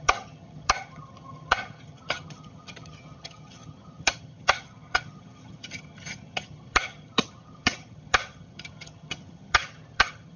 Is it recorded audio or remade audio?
remade